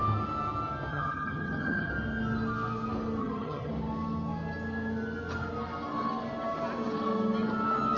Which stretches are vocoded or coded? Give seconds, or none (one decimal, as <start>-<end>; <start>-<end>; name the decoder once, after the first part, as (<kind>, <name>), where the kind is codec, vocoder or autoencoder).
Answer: 0.9-1.9 (vocoder, HiFi-GAN); 3.2-3.7